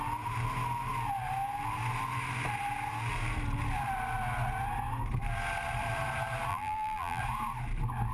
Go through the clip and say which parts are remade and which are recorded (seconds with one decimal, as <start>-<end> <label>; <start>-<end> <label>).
0.0-6.5 recorded; 6.5-7.2 remade; 7.2-8.1 recorded